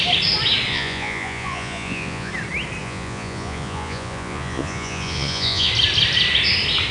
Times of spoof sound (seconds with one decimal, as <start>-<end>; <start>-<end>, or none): 0.7-2.3; 2.8-5.7